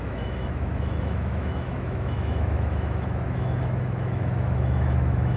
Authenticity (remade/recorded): remade